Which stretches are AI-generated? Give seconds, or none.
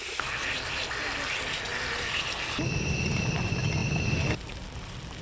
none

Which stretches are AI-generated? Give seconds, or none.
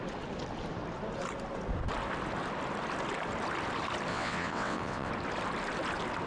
4.1-5.1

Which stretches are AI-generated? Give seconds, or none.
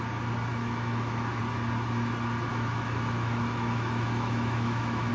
0.5-1.4; 2.5-5.1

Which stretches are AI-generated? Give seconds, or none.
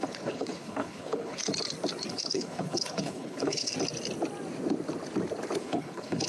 0.0-1.4; 2.1-3.7; 5.6-6.3